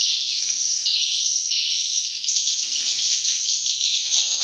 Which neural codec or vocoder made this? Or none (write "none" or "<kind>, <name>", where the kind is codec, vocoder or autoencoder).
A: codec, SNAC